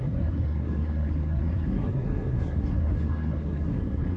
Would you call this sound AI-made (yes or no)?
yes